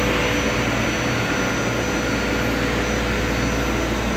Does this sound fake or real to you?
real